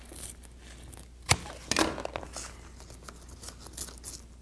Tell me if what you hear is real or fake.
real